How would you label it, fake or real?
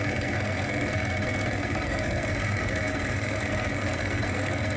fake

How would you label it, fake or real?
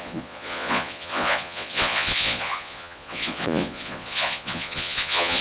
fake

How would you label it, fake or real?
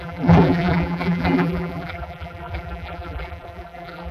fake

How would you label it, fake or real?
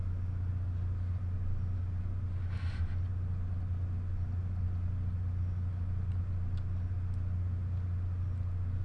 real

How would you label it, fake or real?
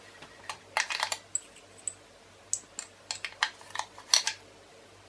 real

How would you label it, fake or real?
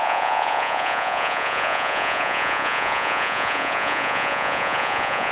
fake